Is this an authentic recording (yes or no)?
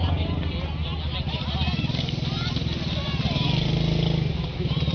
yes